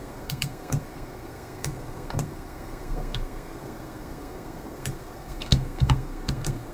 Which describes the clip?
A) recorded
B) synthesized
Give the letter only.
B